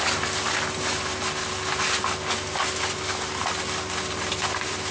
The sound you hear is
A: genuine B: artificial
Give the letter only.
A